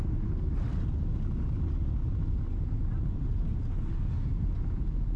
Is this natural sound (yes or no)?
yes